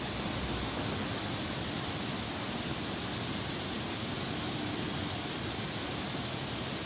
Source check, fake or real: real